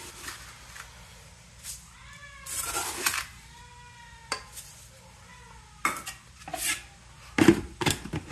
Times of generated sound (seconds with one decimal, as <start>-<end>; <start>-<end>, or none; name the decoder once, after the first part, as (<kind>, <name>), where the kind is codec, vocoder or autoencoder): none